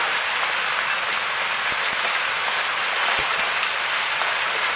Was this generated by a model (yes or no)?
no